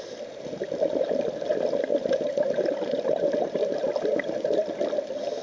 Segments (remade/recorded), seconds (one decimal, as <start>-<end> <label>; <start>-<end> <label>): 0.0-5.4 recorded